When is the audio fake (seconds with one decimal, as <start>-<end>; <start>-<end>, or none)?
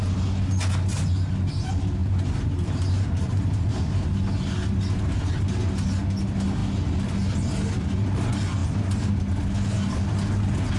2.0-3.7; 8.6-9.1